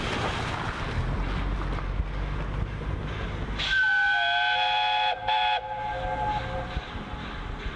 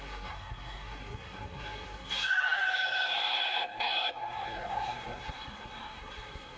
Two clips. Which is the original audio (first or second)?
first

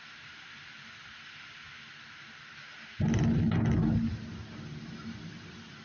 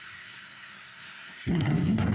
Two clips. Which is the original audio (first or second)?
first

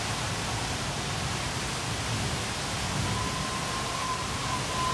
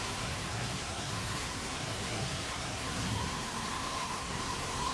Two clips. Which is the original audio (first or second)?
first